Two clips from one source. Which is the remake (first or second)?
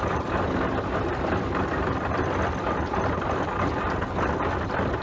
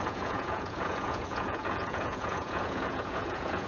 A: second